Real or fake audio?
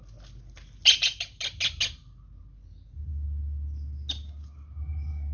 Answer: real